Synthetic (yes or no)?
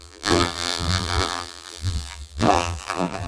yes